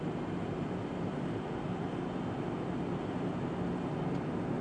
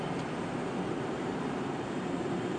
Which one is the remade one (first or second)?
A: second